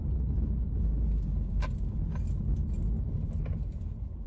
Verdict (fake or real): real